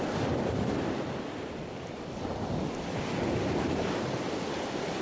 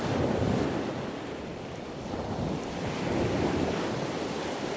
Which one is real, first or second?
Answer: first